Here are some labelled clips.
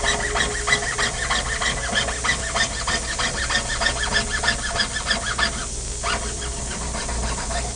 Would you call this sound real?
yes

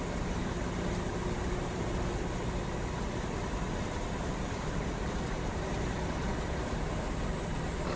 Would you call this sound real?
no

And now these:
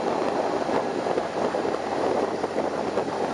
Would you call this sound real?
yes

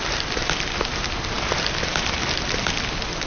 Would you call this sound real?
yes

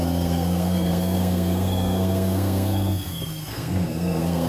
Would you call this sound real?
no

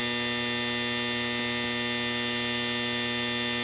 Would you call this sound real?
yes